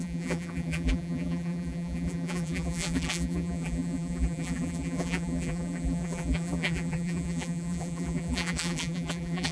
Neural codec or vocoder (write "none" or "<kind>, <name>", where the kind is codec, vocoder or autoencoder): vocoder, BigVGAN v2